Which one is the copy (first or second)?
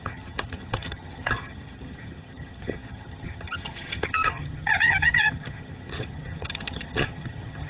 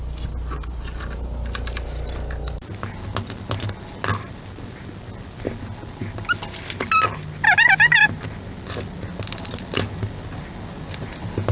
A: first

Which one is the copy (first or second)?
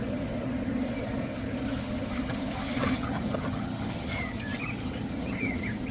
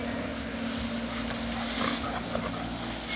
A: first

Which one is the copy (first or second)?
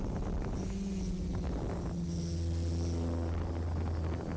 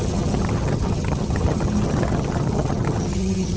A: second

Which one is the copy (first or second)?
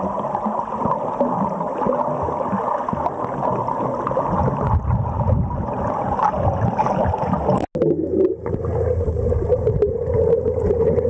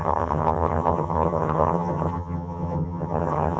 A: second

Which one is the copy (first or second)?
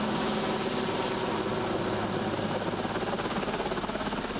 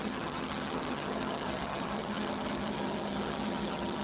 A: second